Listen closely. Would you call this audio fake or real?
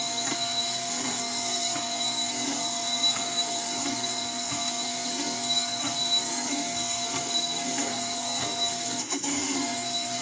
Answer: fake